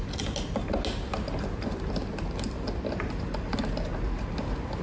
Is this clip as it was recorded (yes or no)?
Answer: yes